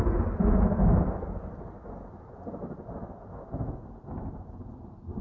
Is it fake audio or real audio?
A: real